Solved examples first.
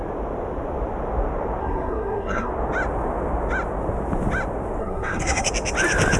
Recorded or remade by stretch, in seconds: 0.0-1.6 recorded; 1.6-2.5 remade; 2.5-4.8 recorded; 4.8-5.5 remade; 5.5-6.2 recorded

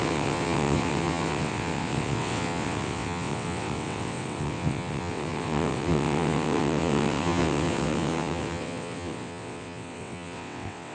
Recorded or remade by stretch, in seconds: 0.0-10.9 remade